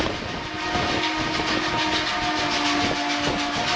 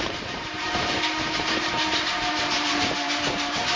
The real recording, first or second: first